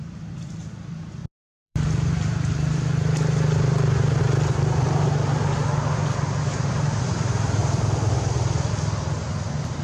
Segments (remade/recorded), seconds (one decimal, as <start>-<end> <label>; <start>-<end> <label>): 0.0-1.2 recorded; 1.2-4.2 remade; 4.2-7.6 recorded; 7.6-8.7 remade; 8.7-9.8 recorded